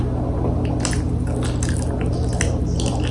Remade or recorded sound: recorded